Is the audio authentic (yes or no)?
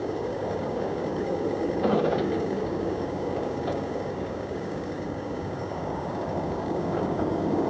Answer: no